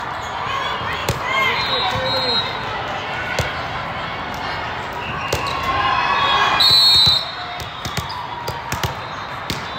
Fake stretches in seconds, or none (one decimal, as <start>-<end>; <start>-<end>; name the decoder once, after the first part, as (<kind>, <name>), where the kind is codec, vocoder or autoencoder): 1.0-1.7 (vocoder, BigVGAN v2)